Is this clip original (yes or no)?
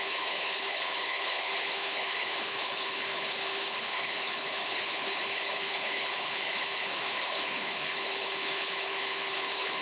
no